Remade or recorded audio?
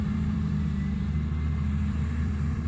remade